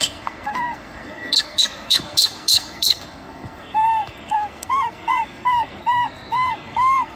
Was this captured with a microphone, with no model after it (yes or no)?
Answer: no